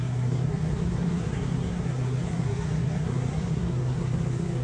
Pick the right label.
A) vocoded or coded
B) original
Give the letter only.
A